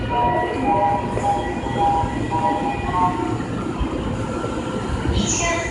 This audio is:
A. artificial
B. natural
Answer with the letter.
B